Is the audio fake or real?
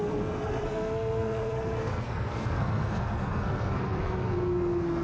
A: fake